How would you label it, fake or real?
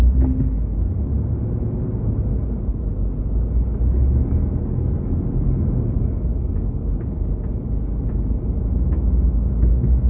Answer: real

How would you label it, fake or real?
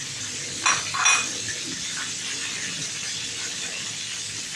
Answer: real